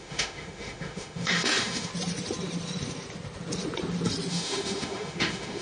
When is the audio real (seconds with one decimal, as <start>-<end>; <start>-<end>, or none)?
1.9-4.3